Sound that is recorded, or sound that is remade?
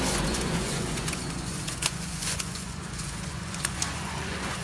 remade